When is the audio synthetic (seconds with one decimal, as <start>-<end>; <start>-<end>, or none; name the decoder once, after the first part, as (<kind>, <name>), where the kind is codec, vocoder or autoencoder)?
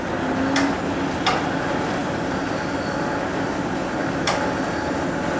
none